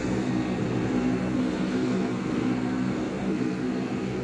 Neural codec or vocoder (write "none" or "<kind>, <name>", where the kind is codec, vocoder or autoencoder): codec, SNAC